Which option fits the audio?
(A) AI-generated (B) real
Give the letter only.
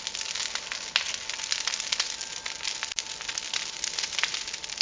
B